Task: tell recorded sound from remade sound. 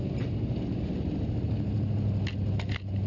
recorded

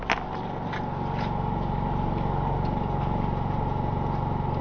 recorded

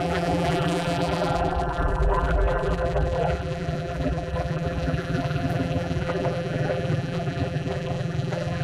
remade